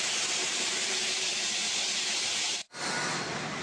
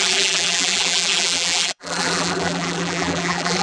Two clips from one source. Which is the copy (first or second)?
second